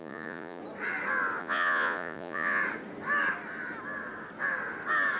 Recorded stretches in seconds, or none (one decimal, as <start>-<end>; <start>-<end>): 0.6-1.4; 2.6-5.2

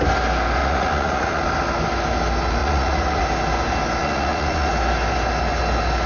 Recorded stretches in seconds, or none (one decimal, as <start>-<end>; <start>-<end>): 0.0-0.6; 1.4-2.6; 3.2-4.0; 4.7-6.1

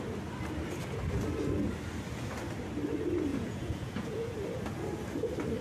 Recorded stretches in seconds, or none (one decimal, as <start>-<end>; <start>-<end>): 0.0-3.3; 4.3-5.6